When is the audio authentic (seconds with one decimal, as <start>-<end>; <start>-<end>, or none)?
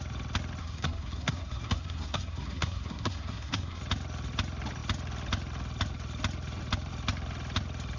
0.0-0.6; 3.8-8.0